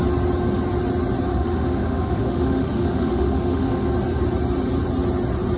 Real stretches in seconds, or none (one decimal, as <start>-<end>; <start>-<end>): 0.0-1.3; 3.9-5.6